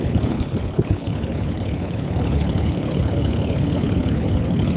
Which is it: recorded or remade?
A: remade